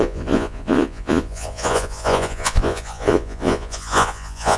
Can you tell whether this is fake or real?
fake